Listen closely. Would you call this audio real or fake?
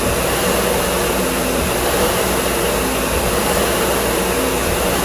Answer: real